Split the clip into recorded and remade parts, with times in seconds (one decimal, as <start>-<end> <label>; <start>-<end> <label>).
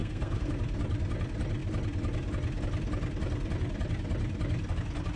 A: 0.0-0.5 remade; 0.5-5.2 recorded